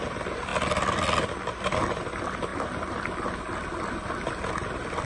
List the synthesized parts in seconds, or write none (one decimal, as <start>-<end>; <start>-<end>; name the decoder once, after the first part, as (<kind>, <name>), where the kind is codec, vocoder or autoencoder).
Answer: 0.0-2.5 (vocoder, BigVGAN v2); 4.5-5.0

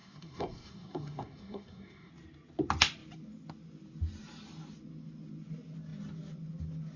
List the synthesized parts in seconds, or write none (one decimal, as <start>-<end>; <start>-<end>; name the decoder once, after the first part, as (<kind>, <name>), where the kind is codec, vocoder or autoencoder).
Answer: 0.0-2.1 (codec, SNAC)

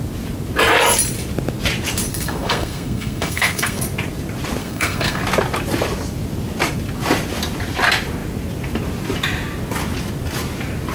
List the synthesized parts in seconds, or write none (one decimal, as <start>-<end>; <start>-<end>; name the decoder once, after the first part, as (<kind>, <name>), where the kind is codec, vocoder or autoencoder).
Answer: 2.1-3.8 (codec, SNAC); 4.6-5.2